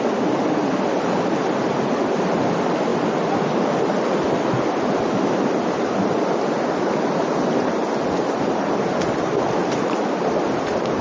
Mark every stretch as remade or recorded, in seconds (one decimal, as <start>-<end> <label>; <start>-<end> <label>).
0.0-11.0 recorded